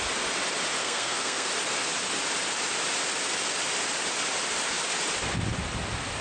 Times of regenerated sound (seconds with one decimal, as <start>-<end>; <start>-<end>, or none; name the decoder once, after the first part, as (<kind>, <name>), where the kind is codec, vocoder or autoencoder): 0.8-1.5 (codec, SNAC)